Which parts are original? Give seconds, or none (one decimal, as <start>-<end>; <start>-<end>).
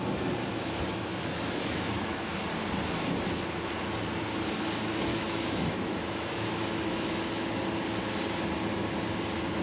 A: 0.0-0.5; 2.4-5.1; 7.5-9.6